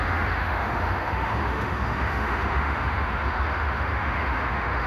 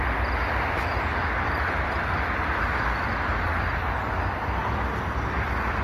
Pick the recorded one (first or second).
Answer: second